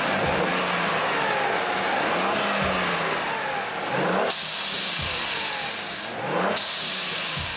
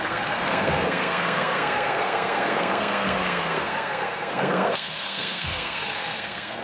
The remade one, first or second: second